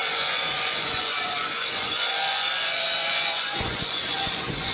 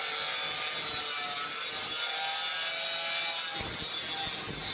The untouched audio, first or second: second